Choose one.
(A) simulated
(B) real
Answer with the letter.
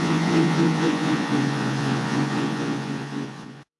A